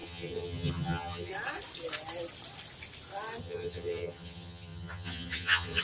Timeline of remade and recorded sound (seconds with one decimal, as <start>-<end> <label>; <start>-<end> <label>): 0.0-1.3 remade; 1.3-3.4 recorded; 3.4-5.8 remade